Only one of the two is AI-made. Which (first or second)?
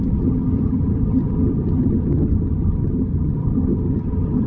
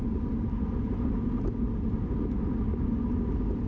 first